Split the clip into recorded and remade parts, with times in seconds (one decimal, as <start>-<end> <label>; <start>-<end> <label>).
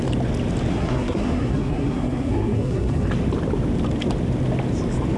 0.0-0.7 recorded; 0.7-3.1 remade; 3.1-5.2 recorded